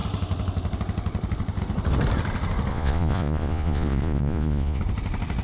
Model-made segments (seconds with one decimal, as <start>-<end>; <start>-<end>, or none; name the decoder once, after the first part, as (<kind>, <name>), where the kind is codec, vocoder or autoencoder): 2.7-4.8 (vocoder, Vocos)